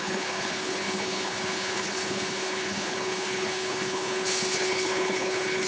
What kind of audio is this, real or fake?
fake